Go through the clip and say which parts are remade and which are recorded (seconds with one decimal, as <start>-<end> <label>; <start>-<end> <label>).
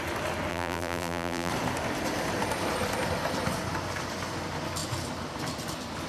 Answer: 0.0-0.5 recorded; 0.5-1.5 remade; 1.5-6.1 recorded